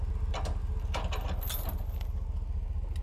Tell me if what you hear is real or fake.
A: real